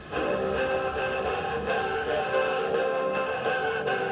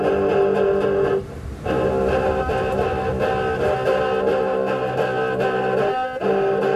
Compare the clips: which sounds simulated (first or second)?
first